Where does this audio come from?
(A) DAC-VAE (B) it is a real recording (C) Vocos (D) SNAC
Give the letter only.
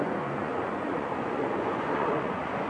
C